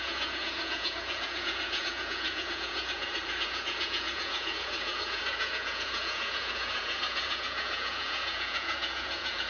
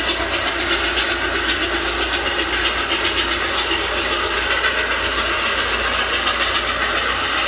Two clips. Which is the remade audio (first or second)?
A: first